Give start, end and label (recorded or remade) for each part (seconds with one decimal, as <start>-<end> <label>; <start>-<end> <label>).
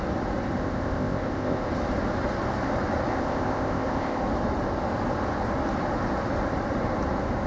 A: 0.0-0.6 recorded; 0.6-1.7 remade; 1.7-3.1 recorded; 3.1-4.2 remade; 4.2-7.5 recorded